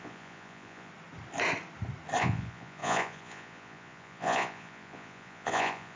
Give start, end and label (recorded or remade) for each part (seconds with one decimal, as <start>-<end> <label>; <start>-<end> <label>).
0.0-0.9 remade; 0.9-2.2 recorded; 2.2-6.0 remade